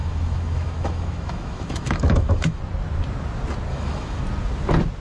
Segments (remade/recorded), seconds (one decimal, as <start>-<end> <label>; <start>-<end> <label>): 0.0-2.6 remade; 2.6-3.7 recorded; 3.7-4.2 remade; 4.2-5.0 recorded

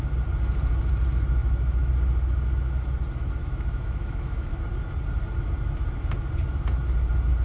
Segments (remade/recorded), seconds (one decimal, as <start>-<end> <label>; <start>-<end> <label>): 0.0-1.4 recorded; 1.4-1.9 remade; 1.9-3.4 recorded; 3.4-4.6 remade; 4.6-7.4 recorded

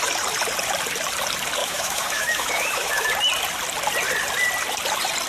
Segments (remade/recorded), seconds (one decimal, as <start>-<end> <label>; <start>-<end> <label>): 0.0-1.6 recorded; 1.6-3.1 remade; 3.1-5.3 recorded